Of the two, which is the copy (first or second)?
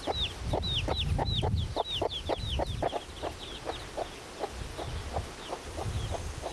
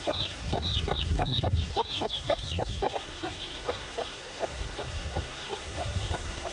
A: second